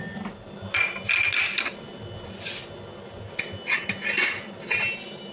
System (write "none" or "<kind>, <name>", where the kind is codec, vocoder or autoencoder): none